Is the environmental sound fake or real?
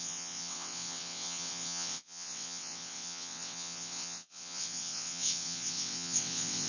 fake